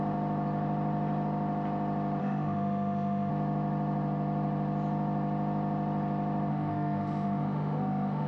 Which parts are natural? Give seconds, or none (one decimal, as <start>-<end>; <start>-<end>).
0.0-2.2; 3.3-6.5